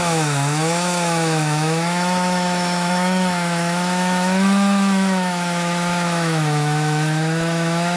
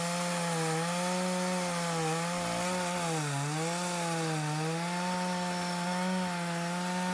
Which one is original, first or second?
second